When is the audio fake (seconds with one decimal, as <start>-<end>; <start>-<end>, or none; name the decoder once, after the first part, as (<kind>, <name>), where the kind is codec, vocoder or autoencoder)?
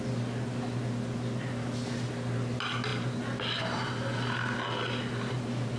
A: none